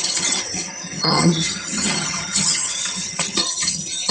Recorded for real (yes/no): no